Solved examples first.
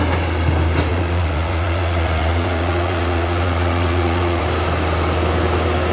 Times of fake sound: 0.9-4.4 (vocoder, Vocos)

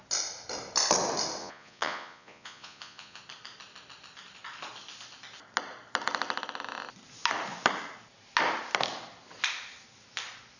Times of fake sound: 1.4-3.2 (vocoder, Vocos)

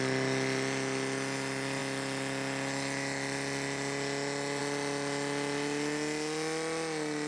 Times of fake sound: none

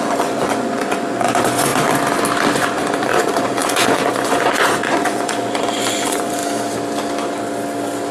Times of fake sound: 0.0-1.7 (vocoder, Vocos); 2.5-6.4

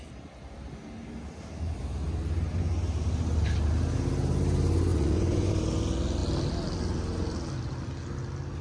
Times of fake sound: 4.9-5.5 (vocoder, Vocos)

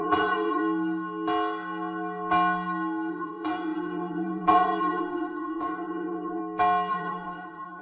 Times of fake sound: 0.0-0.6 (vocoder, Vocos); 3.1-6.4; 6.9-7.8